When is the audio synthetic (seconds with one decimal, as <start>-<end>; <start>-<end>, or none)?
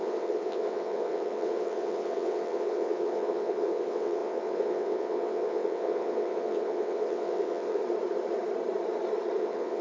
0.0-7.8; 9.4-9.8